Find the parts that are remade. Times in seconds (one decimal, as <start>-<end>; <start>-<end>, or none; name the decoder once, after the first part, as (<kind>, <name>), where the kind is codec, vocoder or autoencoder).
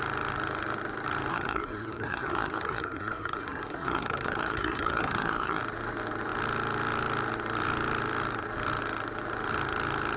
1.3-5.6 (codec, SNAC)